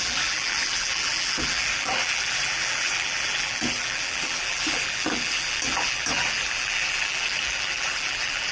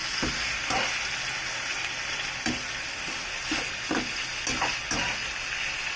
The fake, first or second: first